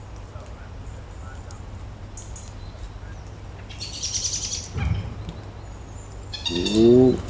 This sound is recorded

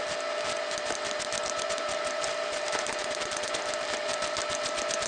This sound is recorded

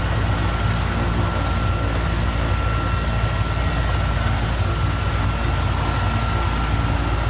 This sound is recorded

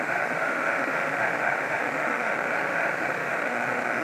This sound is remade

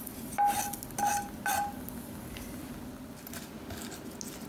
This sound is recorded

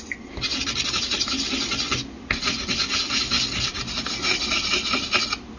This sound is recorded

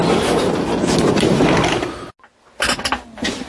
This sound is recorded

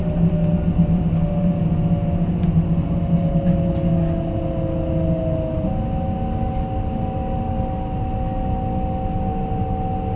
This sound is recorded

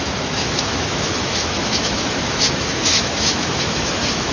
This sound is remade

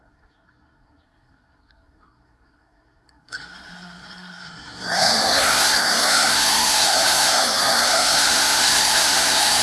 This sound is remade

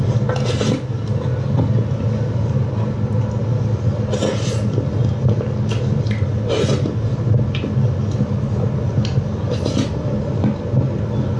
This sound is recorded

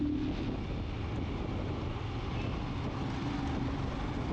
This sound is recorded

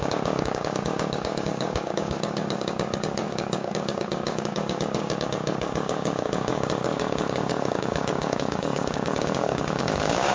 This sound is remade